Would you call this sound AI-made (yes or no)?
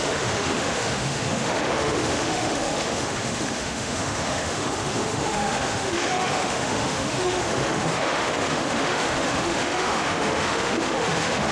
yes